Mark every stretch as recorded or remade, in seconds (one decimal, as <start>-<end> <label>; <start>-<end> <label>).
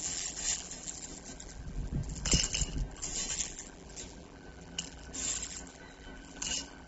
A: 0.0-6.9 remade